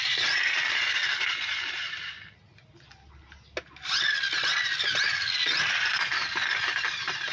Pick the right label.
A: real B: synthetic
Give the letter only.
A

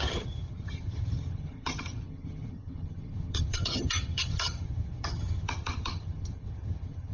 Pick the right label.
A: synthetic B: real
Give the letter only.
A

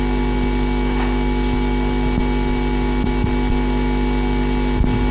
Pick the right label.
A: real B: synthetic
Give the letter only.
A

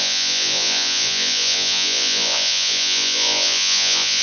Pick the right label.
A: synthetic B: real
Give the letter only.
A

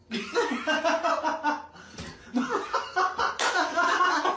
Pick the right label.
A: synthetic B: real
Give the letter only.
B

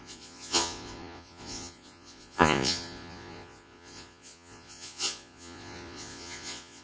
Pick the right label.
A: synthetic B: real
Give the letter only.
A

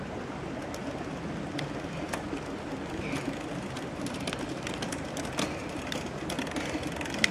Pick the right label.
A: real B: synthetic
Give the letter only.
A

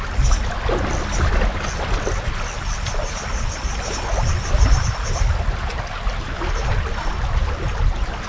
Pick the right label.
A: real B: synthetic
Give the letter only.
A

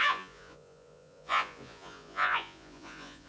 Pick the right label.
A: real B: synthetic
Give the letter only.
B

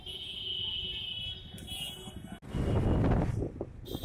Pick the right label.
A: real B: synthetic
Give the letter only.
A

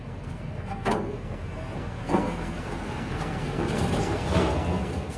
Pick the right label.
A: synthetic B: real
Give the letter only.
A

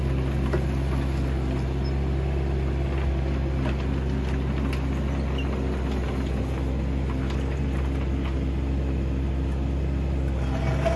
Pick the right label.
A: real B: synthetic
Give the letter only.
A